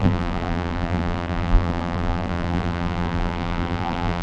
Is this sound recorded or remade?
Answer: remade